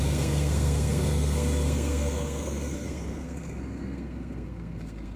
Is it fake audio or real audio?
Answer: fake